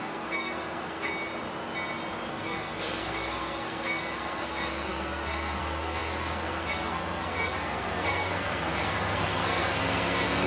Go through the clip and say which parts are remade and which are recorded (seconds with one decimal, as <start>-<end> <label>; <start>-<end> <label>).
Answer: 0.0-1.1 remade; 1.1-2.3 recorded; 2.3-10.5 remade